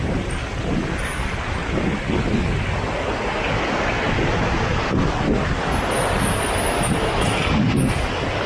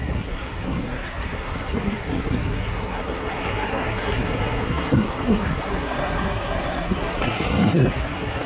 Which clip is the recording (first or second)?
first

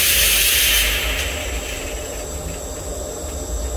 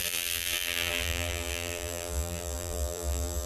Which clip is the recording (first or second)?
first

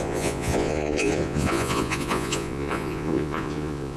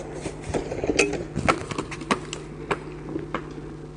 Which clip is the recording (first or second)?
second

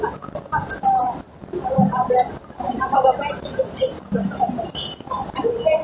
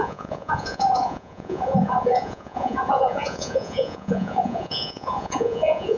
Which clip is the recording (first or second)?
first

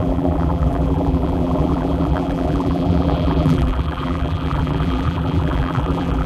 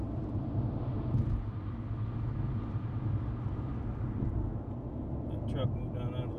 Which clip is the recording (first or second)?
second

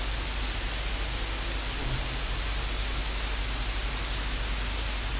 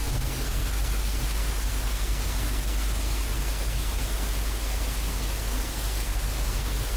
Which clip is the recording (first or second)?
first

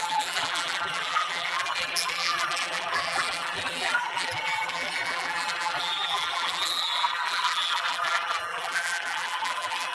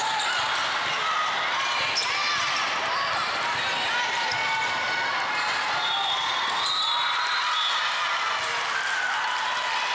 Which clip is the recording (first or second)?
second